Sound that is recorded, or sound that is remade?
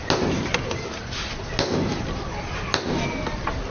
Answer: recorded